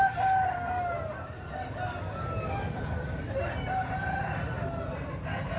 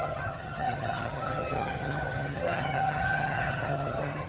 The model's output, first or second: second